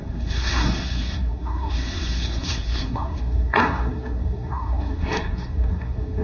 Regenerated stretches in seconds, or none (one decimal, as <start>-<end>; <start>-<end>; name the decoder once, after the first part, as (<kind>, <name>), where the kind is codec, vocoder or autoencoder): 0.0-6.2 (codec, SNAC)